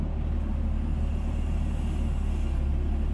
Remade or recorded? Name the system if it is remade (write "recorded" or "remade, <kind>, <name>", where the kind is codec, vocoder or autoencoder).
recorded